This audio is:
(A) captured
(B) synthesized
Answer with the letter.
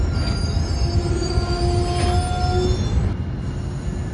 A